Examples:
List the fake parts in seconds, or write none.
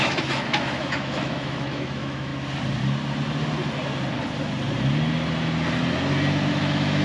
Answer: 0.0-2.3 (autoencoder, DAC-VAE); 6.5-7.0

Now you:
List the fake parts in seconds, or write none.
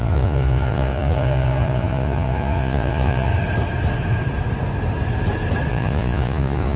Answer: 0.0-3.3 (vocoder, Vocos); 5.7-6.8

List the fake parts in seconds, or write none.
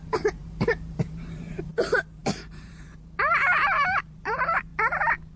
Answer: 0.0-4.7 (vocoder, BigVGAN v2)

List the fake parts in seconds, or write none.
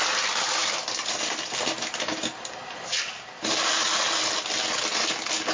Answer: 0.6-1.6 (vocoder, BigVGAN v2); 3.4-4.4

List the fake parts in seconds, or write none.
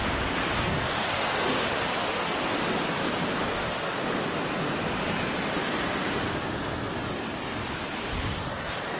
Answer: none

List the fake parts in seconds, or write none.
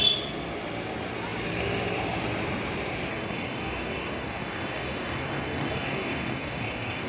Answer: 3.1-7.1 (codec, DAC)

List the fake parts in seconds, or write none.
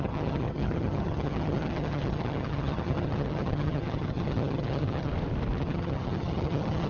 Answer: 0.0-5.1 (vocoder, HiFi-GAN); 5.6-6.9